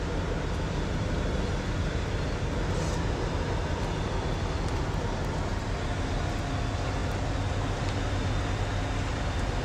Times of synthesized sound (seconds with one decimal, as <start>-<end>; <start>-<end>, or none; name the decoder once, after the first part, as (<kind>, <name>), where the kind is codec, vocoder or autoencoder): none